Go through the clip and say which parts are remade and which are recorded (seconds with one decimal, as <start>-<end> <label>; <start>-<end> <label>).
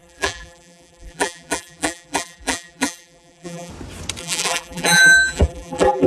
0.0-3.7 remade; 3.7-4.2 recorded; 4.2-6.1 remade